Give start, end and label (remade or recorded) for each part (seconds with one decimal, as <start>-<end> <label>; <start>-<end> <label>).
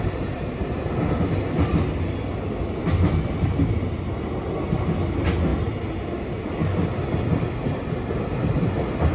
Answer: 0.0-9.1 recorded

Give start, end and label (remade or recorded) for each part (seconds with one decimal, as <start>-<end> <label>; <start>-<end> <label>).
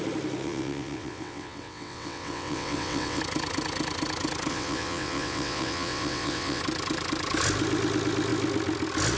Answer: 0.0-0.4 recorded; 0.4-3.2 remade; 3.2-4.5 recorded; 4.5-6.6 remade; 6.6-9.2 recorded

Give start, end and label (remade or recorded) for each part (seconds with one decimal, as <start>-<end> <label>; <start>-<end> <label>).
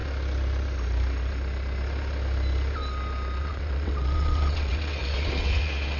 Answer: 0.0-3.4 recorded; 3.4-6.0 remade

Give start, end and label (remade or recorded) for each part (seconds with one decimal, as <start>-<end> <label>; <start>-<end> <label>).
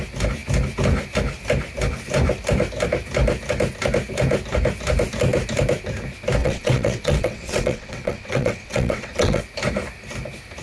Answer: 0.0-6.4 recorded; 6.4-9.4 remade; 9.4-10.6 recorded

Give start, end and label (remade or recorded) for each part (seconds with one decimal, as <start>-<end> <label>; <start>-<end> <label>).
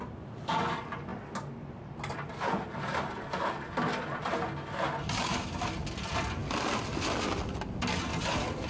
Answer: 0.0-8.7 recorded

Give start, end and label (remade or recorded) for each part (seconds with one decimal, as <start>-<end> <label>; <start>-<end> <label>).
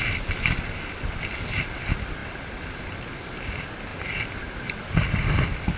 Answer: 0.0-5.8 recorded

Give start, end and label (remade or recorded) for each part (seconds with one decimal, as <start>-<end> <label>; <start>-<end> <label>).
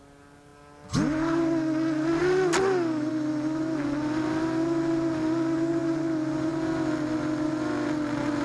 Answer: 0.0-8.4 recorded